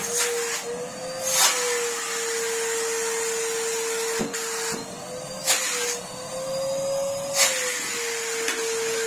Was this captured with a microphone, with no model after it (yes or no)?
yes